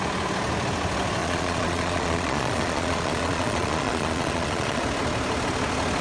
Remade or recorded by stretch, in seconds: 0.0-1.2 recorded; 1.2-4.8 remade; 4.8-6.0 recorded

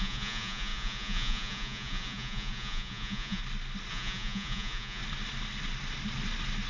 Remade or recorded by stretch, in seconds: 0.0-3.4 remade; 3.4-3.9 recorded; 3.9-5.0 remade; 5.0-6.7 recorded

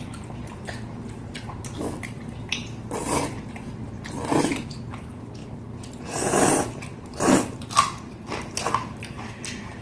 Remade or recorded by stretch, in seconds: 0.0-9.8 recorded

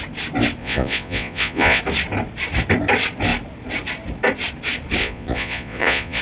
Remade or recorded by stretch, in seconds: 0.0-0.6 recorded; 0.6-1.8 remade; 1.8-5.0 recorded; 5.0-6.2 remade

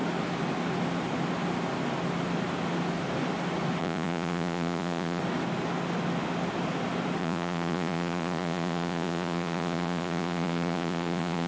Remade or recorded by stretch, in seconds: 0.0-3.8 recorded; 3.8-5.2 remade; 5.2-7.2 recorded; 7.2-11.5 remade

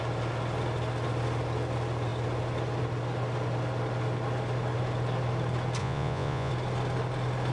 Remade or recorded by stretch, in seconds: 0.0-5.8 recorded; 5.8-6.5 remade; 6.5-7.5 recorded